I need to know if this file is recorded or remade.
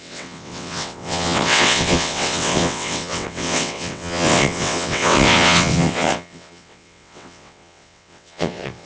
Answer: remade